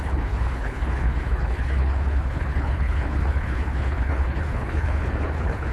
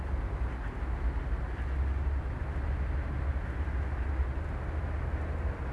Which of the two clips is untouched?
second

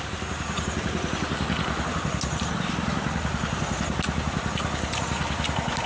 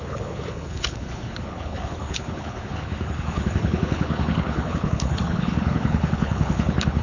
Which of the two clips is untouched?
first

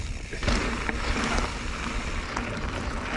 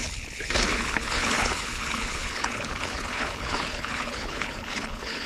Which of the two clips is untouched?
first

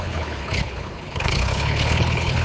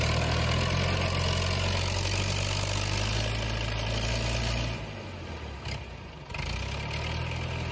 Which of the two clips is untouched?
second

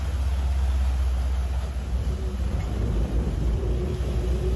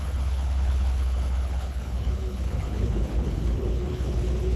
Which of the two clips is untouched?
first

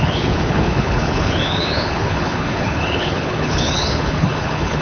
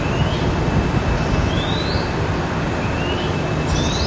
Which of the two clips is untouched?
second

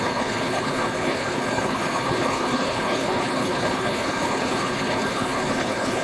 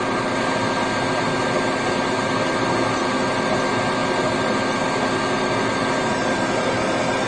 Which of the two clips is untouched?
second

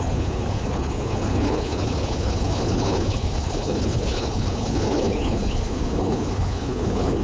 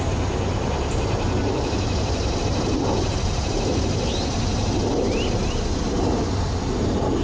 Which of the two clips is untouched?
second